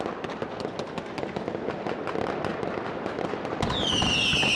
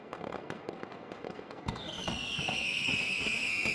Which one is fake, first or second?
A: second